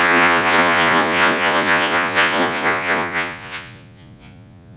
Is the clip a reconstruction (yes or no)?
yes